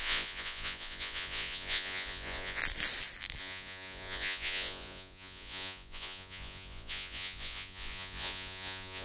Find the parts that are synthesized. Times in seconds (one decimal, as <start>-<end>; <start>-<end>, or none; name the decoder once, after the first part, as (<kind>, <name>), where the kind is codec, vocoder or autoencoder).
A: 0.0-2.6 (vocoder, Vocos); 3.4-9.0